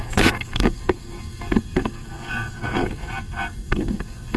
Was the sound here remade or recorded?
remade